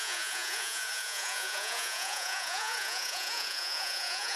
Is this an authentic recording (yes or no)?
no